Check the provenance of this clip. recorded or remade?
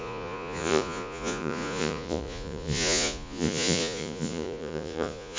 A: remade